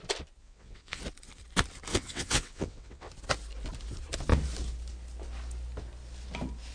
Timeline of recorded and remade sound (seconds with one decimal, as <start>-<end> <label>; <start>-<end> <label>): 0.0-0.4 recorded; 0.4-1.0 remade; 1.0-1.9 recorded; 1.9-3.1 remade; 3.1-6.7 recorded